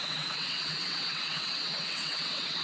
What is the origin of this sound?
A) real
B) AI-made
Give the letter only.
B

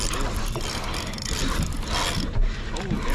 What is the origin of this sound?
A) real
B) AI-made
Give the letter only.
A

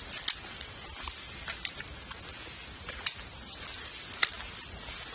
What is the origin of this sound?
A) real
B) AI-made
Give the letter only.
A